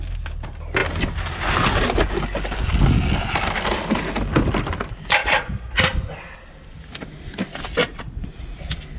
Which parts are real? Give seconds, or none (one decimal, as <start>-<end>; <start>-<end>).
0.0-5.2; 5.8-7.8; 8.6-9.0

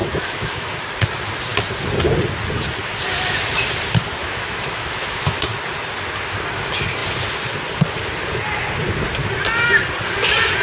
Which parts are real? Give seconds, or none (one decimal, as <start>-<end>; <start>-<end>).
0.7-4.2; 5.4-10.6